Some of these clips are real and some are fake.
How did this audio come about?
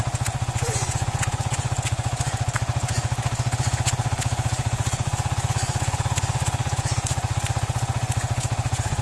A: fake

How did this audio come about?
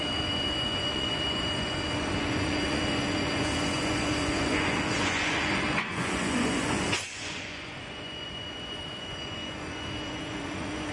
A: fake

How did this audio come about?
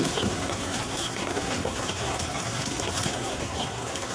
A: fake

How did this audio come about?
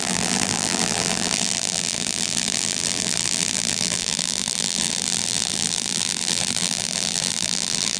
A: fake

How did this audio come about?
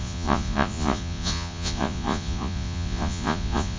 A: fake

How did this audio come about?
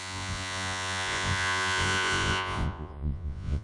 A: fake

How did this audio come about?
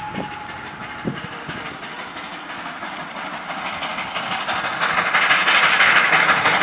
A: real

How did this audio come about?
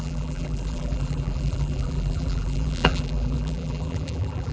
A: fake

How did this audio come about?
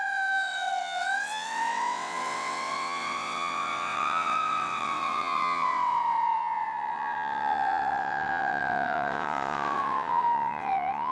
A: fake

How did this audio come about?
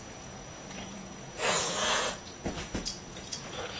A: fake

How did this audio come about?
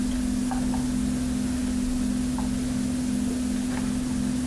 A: real